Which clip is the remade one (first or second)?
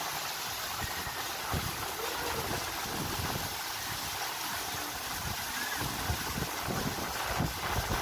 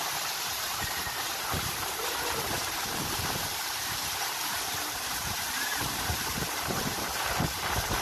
second